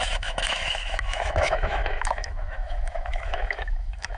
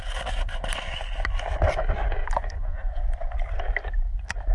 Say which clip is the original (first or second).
second